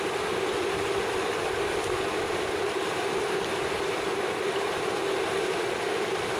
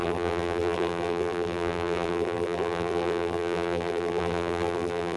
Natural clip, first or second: first